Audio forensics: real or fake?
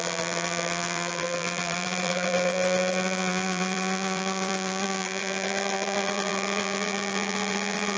fake